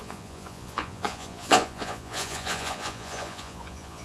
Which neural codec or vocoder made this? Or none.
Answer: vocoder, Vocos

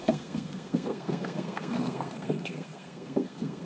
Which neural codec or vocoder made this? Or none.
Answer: codec, SNAC